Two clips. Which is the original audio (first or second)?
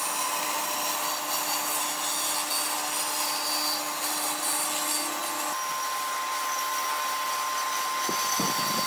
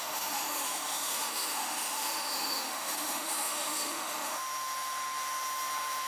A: first